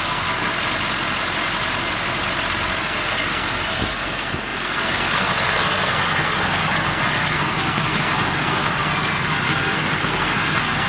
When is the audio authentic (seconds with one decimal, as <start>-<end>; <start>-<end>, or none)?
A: 0.5-2.8